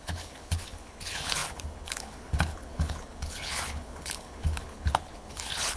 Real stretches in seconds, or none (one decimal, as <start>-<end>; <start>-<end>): none